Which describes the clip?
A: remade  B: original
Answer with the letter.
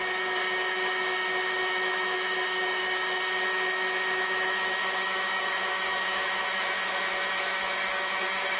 A